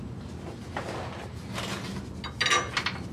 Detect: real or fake real